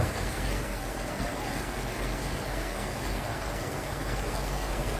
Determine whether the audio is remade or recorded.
remade